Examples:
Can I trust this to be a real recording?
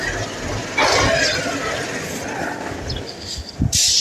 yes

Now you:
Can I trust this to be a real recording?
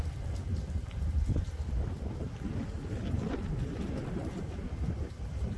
yes